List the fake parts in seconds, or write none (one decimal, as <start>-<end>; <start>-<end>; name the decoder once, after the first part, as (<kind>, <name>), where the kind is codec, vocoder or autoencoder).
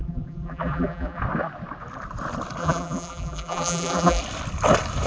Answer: 0.0-1.2 (vocoder, BigVGAN v2); 2.6-4.2